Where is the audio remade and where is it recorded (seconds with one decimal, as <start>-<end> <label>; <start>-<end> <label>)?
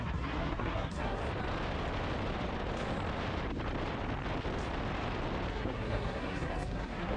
0.0-1.2 remade; 1.2-5.5 recorded; 5.5-7.2 remade